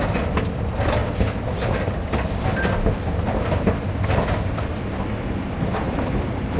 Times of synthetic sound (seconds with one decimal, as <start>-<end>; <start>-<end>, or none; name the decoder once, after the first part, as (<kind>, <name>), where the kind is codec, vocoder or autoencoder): none